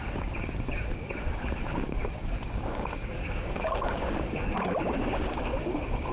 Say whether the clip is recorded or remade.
remade